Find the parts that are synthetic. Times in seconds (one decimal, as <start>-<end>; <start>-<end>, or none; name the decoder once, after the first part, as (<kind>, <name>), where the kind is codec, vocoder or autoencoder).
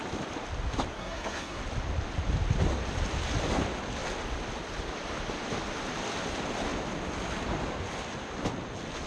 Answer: 0.9-1.6 (codec, SNAC)